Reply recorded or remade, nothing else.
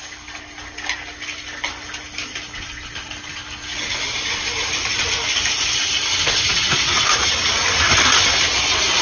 recorded